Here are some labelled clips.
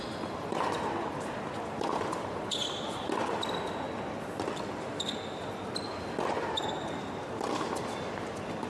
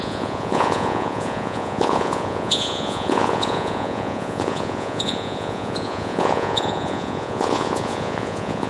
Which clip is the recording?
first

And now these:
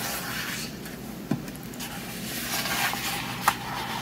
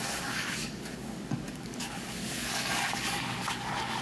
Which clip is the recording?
first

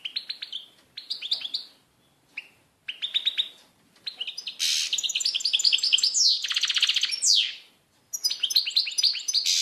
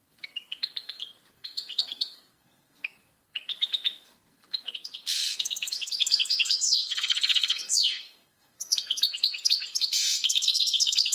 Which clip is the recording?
first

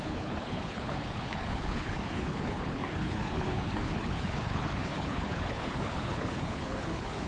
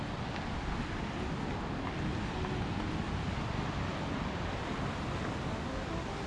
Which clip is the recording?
second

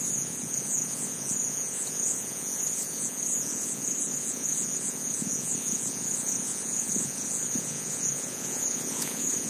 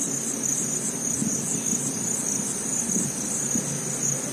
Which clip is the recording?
second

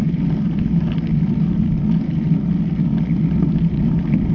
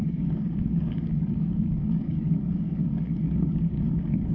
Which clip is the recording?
first